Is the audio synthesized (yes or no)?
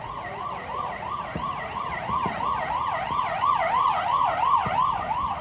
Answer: yes